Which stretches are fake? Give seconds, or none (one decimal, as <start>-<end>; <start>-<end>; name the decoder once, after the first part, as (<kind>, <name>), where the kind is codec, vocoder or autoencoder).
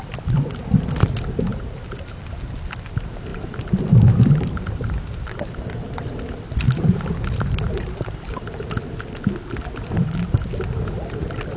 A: 1.5-2.4 (vocoder, BigVGAN v2); 3.3-6.2